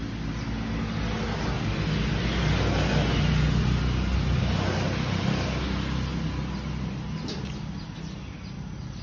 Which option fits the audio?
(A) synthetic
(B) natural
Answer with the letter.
B